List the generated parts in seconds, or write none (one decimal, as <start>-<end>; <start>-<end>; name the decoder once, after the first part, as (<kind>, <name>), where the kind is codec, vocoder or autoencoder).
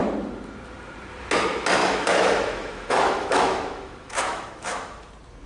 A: 1.8-5.1 (autoencoder, DAC-VAE)